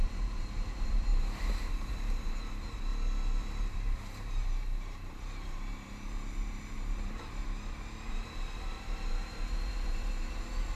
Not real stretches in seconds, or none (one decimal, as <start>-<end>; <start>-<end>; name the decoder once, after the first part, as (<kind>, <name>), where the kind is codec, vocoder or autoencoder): 0.0-2.9 (vocoder, BigVGAN v2); 3.6-10.8